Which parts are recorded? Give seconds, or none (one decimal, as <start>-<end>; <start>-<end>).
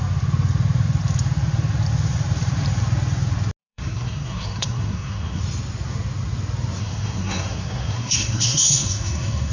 0.0-3.6; 5.4-6.8